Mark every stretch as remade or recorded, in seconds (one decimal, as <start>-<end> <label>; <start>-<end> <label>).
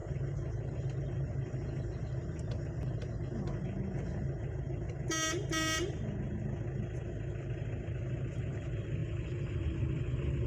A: 0.0-10.5 recorded